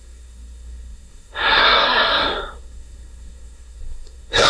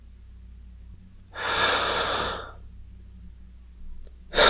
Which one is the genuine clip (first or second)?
second